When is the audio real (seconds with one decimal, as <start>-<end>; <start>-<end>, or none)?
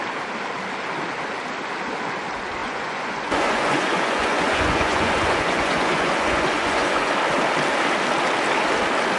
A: 0.0-2.6; 7.1-9.2